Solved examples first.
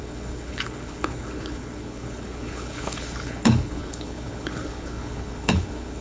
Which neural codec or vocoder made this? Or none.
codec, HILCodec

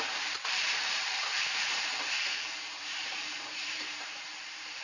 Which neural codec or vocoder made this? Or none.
vocoder, BigVGAN v2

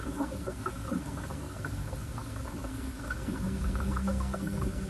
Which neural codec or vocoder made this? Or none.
codec, SNAC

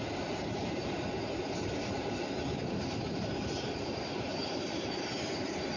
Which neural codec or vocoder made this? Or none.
vocoder, BigVGAN v2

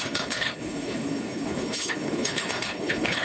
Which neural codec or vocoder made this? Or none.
codec, HILCodec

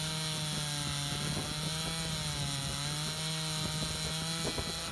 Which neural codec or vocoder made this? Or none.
none